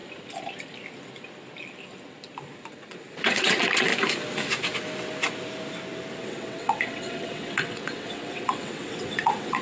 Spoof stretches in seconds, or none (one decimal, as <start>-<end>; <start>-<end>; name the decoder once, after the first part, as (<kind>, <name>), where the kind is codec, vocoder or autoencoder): 2.7-3.9 (vocoder, WaveNeXt); 6.2-9.6